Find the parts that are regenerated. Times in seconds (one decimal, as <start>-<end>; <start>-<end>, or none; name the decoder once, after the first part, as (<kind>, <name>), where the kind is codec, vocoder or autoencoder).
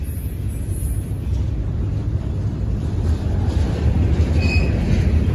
2.0-4.3 (vocoder, BigVGAN v2)